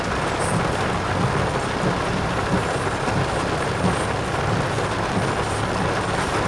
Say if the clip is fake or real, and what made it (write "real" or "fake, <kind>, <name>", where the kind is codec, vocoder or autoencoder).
real